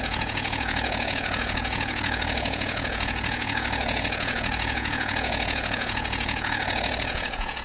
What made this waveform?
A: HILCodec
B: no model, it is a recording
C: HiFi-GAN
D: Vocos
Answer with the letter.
D